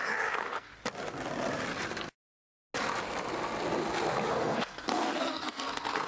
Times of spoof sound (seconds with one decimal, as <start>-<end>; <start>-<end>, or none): 0.0-0.7; 4.3-6.1